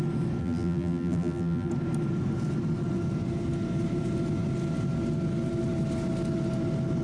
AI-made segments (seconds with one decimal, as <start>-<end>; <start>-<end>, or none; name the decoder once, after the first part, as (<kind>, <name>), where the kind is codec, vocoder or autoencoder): 0.4-1.7 (vocoder, BigVGAN v2)